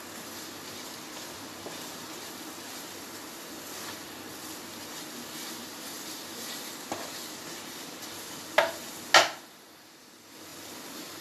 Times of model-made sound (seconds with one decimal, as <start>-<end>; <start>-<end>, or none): none